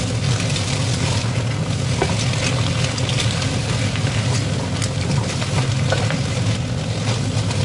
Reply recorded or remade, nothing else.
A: recorded